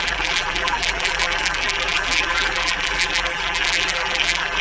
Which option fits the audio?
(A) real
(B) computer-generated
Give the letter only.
B